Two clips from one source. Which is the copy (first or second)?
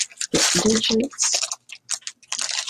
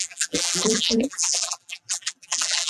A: second